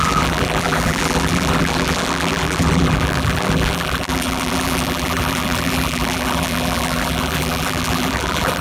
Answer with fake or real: fake